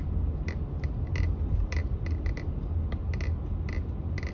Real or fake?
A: real